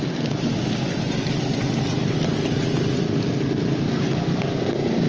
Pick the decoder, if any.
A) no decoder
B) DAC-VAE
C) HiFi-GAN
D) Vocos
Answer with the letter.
A